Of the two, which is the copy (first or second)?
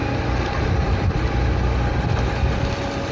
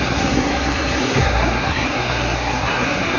second